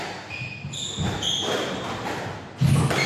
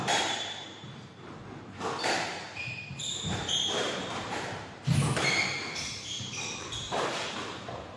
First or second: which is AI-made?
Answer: second